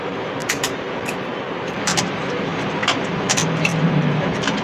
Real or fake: fake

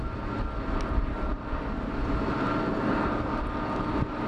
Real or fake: real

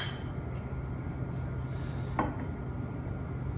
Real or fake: real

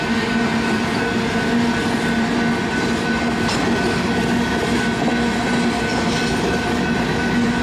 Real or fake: real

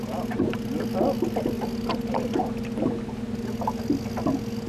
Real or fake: real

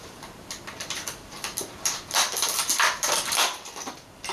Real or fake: fake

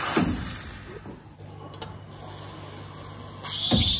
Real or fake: real